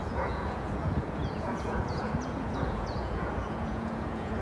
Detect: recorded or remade remade